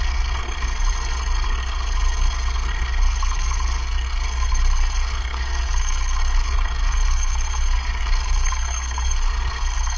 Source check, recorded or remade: remade